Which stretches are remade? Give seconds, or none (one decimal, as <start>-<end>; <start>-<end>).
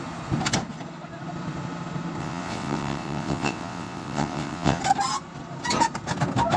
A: 2.2-4.8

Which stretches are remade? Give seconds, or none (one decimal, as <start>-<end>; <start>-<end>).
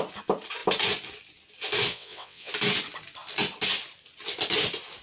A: 1.9-2.5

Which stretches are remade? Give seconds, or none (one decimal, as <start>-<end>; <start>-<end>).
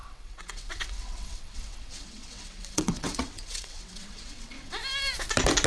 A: 0.0-4.8